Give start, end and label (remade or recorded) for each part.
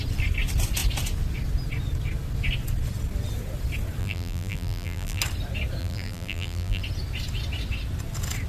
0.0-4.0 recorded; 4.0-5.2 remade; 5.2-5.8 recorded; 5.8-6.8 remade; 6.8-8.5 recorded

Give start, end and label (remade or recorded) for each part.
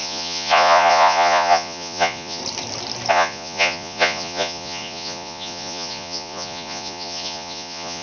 0.0-2.4 remade; 2.4-3.1 recorded; 3.1-8.0 remade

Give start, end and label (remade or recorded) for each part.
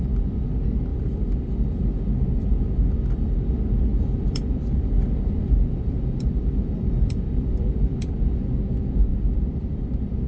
0.0-0.9 recorded; 0.9-3.5 remade; 3.5-3.9 recorded; 3.9-8.2 remade; 8.2-9.1 recorded; 9.1-9.9 remade; 9.9-10.3 recorded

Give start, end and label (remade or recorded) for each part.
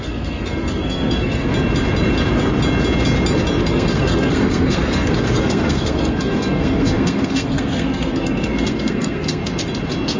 0.0-1.5 remade; 1.5-3.6 recorded; 3.6-9.4 remade; 9.4-10.2 recorded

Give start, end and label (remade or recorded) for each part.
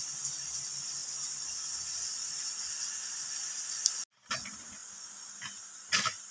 0.0-6.3 recorded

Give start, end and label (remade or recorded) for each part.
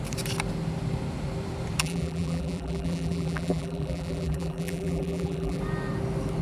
0.0-1.8 recorded; 1.8-5.6 remade; 5.6-6.4 recorded